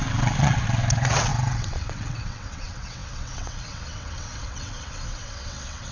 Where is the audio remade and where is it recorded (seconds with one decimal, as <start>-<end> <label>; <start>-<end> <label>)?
0.0-5.9 remade